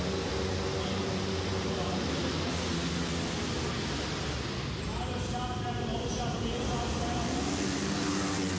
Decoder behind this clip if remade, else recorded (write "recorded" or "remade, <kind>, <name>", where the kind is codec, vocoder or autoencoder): recorded